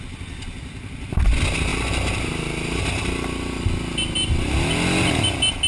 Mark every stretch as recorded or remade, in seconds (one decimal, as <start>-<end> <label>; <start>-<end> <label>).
0.0-5.7 recorded